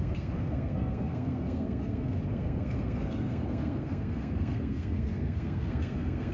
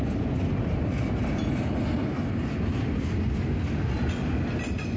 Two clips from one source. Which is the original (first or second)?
second